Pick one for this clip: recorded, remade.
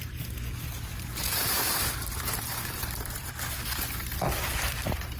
remade